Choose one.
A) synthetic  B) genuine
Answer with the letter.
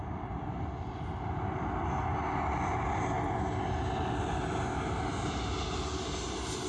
B